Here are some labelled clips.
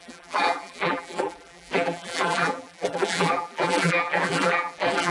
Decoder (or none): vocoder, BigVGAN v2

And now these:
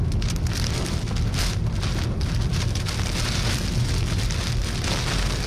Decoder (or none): none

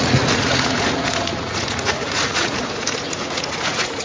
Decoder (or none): vocoder, Vocos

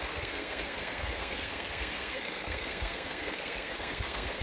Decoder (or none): codec, SNAC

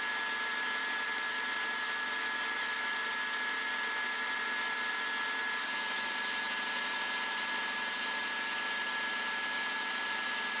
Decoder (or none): none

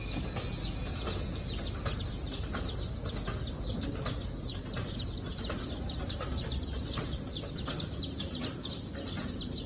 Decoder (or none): none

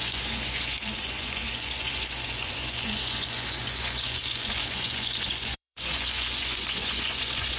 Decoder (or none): vocoder, Vocos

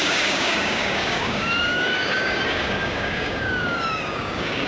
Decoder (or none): codec, DAC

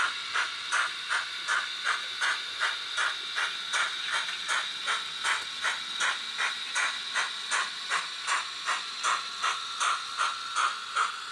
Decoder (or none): none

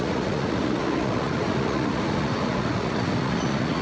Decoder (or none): vocoder, Vocos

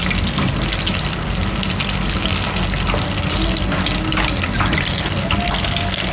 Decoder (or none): none